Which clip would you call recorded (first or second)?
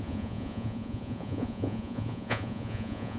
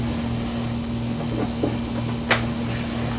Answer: second